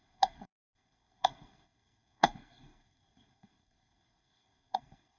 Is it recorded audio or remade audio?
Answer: remade